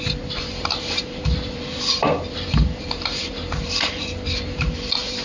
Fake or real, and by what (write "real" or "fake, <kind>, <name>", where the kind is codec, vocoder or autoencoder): fake, vocoder, BigVGAN v2